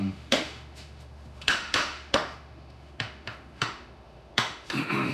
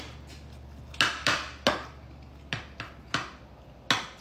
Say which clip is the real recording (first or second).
second